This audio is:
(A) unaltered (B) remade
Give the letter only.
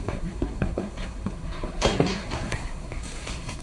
B